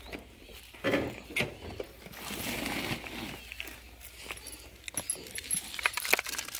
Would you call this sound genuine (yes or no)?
yes